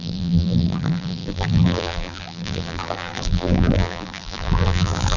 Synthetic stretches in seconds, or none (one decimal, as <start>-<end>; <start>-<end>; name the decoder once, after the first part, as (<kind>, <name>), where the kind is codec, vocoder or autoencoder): 0.0-5.2 (vocoder, BigVGAN v2)